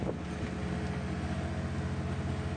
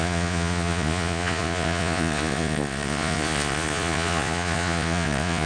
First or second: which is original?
first